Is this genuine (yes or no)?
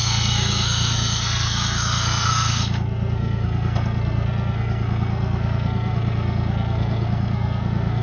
no